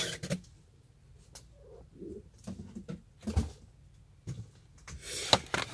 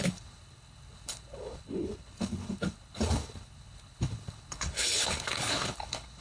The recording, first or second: first